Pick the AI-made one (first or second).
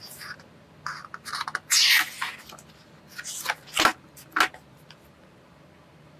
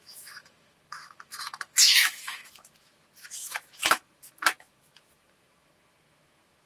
second